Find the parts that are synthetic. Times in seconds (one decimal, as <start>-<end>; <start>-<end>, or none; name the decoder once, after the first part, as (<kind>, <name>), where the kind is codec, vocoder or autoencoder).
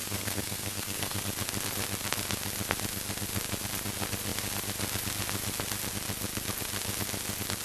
0.0-1.2 (codec, SNAC)